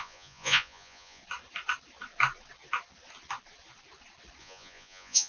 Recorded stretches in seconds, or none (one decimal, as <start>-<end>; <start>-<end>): 1.2-4.4